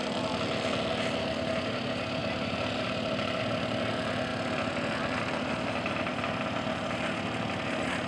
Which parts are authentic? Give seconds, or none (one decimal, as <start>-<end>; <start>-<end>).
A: 0.0-8.1